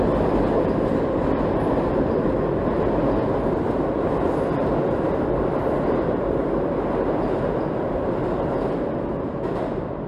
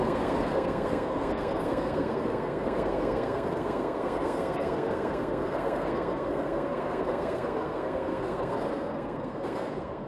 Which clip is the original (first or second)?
first